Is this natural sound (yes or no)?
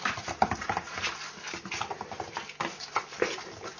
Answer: yes